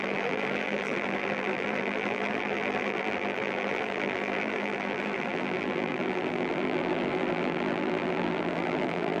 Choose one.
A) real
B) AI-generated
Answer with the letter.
B